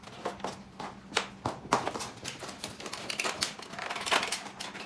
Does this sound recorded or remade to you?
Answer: recorded